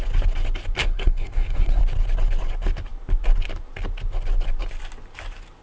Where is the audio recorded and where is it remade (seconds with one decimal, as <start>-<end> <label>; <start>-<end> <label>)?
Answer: 0.0-0.8 recorded; 0.8-1.8 remade; 1.8-5.6 recorded